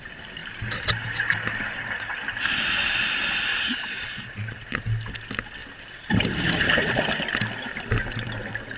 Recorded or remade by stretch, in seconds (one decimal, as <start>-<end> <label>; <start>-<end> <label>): 0.0-3.5 recorded; 3.5-4.8 remade; 4.8-8.8 recorded